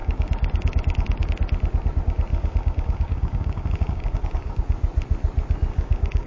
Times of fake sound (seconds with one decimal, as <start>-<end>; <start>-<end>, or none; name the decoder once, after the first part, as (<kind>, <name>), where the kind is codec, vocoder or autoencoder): 0.0-1.3 (codec, DAC); 2.3-4.6; 5.7-6.3